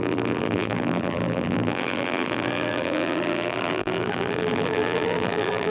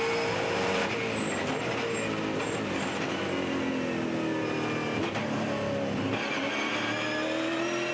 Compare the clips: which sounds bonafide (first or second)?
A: second